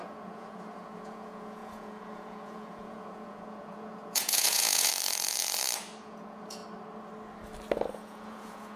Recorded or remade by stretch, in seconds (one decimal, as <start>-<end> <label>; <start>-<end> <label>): 0.0-4.9 remade; 4.9-6.0 recorded; 6.0-6.6 remade; 6.6-7.9 recorded; 7.9-8.8 remade